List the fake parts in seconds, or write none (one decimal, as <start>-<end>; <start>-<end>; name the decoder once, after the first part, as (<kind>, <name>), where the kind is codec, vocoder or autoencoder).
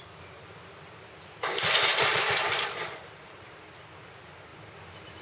1.9-3.6 (vocoder, BigVGAN v2)